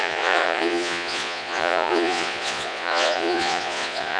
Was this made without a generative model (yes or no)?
no